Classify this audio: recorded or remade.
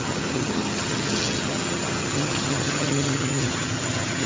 remade